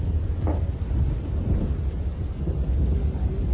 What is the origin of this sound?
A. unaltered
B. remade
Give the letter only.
A